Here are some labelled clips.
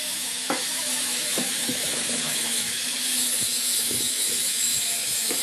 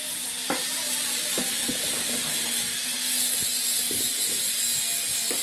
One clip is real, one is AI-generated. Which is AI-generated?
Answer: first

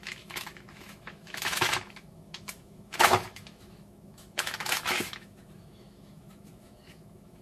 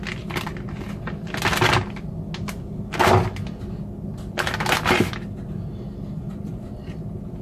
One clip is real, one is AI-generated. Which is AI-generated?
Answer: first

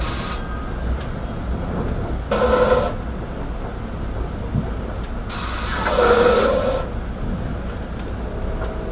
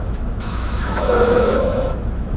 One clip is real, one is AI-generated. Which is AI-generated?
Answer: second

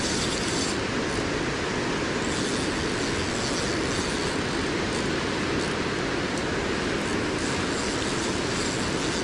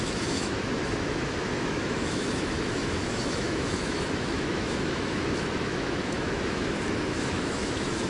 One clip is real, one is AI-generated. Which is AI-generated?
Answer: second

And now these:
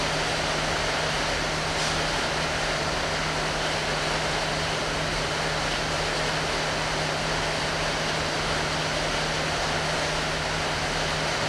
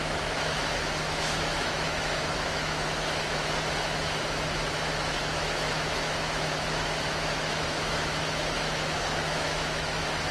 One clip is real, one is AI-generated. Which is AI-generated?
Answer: second